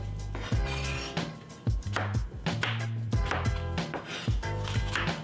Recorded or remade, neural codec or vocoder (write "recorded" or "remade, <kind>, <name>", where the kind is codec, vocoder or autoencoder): recorded